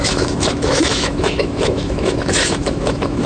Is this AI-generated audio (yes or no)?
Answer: yes